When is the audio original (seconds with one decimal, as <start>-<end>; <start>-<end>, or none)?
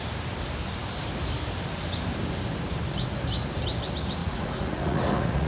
0.0-4.2